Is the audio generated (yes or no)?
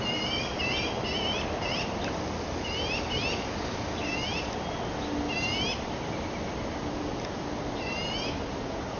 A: no